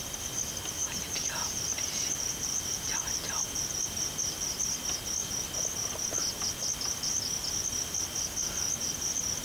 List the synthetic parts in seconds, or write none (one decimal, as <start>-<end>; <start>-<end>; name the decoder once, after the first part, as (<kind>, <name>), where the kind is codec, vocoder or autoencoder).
0.8-2.9 (vocoder, BigVGAN v2)